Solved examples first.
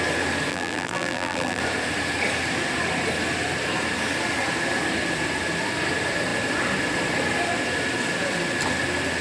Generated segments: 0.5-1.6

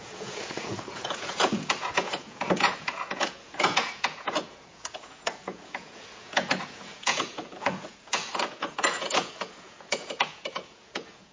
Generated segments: 0.0-11.3

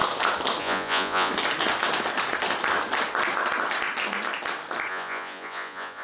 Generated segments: 0.6-1.3; 4.9-6.0